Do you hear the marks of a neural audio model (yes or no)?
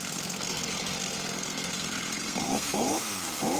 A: yes